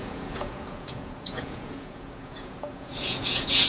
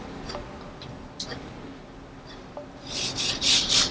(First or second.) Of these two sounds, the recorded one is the second